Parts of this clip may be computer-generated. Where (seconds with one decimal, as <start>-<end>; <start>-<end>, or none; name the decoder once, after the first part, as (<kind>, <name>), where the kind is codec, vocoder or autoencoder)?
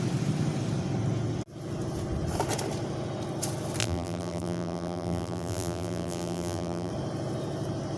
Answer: 3.8-6.9 (vocoder, BigVGAN v2)